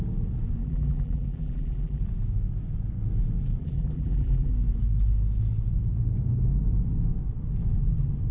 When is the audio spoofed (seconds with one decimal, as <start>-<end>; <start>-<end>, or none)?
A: 0.6-2.0; 3.6-4.5